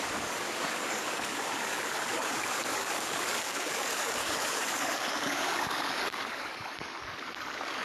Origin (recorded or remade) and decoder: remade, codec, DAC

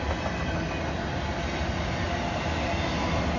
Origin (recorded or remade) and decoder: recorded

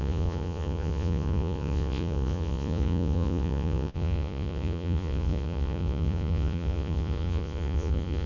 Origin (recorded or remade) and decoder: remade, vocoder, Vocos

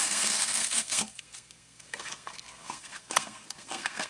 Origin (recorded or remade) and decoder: remade, codec, SNAC